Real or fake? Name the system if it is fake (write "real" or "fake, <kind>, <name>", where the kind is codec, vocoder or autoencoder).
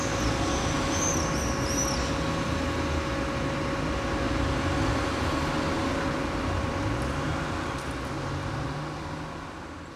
real